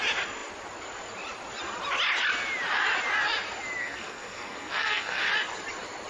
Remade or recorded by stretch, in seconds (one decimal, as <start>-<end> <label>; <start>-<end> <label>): 0.0-3.8 recorded; 3.8-5.3 remade; 5.3-6.1 recorded